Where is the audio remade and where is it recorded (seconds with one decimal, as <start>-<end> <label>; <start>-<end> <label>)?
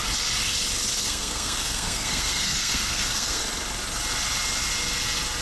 0.0-0.9 recorded; 0.9-3.4 remade; 3.4-5.4 recorded